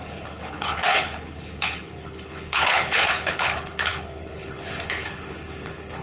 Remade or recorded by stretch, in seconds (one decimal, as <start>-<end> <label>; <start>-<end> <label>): 0.0-6.0 remade